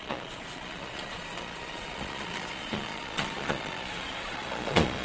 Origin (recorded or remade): remade